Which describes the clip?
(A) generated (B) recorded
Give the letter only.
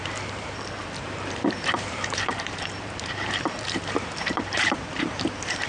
A